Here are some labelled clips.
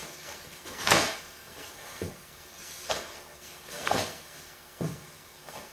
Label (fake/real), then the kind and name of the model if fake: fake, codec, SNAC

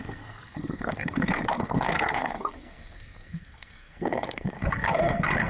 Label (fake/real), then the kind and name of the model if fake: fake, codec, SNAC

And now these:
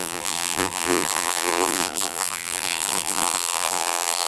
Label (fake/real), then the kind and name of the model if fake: fake, vocoder, BigVGAN v2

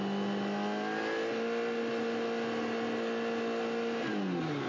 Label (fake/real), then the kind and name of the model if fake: real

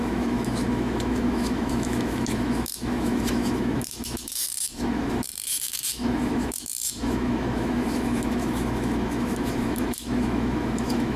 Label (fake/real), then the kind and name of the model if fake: fake, autoencoder, DAC-VAE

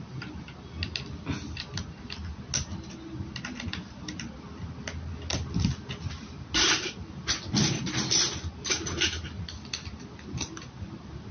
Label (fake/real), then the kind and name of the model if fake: real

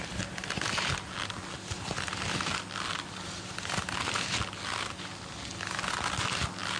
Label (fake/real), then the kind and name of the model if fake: real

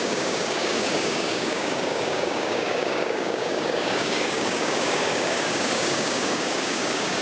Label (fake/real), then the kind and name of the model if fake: fake, codec, DAC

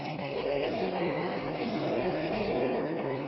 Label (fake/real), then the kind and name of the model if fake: fake, codec, SNAC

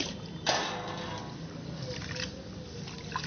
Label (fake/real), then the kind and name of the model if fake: real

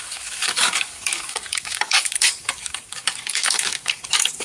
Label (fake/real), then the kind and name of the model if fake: fake, codec, DAC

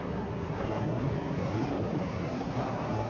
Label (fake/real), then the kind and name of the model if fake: fake, codec, SNAC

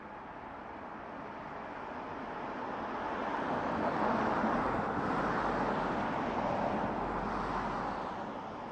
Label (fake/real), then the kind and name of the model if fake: real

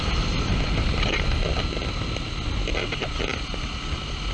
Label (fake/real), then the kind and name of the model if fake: real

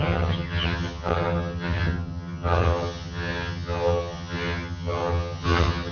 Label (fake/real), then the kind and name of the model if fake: fake, vocoder, HiFi-GAN